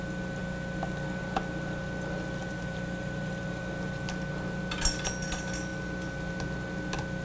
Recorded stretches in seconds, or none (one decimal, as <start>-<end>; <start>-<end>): 0.0-2.4; 3.6-7.2